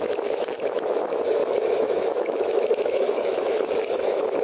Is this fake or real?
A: fake